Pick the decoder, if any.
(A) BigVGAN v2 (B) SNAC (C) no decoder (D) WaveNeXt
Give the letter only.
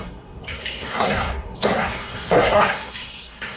B